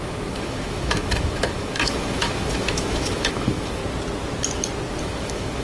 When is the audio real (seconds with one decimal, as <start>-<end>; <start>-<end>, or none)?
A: 3.8-5.0